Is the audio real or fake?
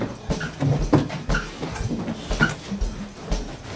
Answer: real